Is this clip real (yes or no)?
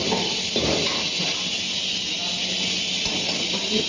yes